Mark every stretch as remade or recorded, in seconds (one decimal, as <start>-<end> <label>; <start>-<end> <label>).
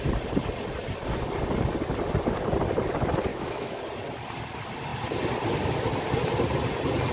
0.0-3.3 recorded; 3.3-3.8 remade; 3.8-7.1 recorded